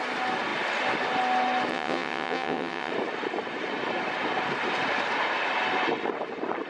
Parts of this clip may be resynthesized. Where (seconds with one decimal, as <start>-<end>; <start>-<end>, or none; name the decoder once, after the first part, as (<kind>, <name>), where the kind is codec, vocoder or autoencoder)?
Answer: 1.7-2.9 (vocoder, WaveNeXt)